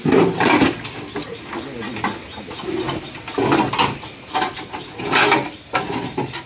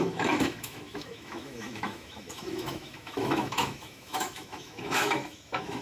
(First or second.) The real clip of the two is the first